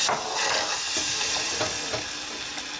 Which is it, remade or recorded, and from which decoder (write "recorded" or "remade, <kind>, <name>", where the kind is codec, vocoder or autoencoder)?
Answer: recorded